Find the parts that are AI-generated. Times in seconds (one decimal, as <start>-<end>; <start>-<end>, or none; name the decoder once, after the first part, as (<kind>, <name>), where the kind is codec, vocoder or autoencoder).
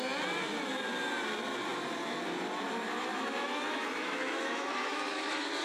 3.1-5.6 (autoencoder, DAC-VAE)